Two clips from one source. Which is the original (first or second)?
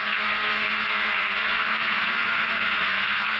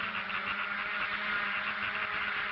second